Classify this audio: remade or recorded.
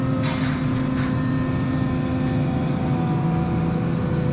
recorded